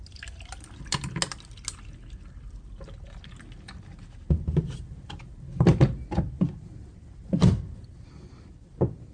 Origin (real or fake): real